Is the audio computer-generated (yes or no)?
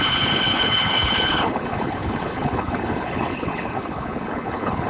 yes